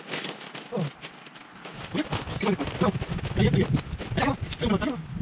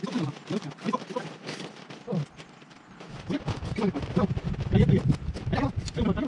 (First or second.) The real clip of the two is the first